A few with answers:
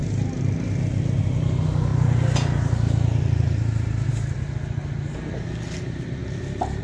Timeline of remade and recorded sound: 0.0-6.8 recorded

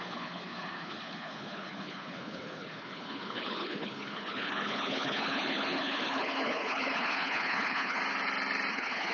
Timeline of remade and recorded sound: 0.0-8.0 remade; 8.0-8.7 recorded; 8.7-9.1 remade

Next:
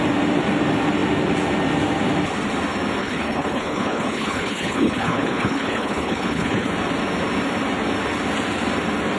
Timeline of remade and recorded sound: 0.0-3.0 recorded; 3.0-6.7 remade; 6.7-9.2 recorded